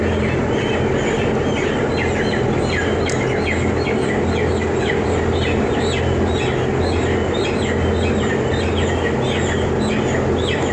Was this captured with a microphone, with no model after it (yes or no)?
yes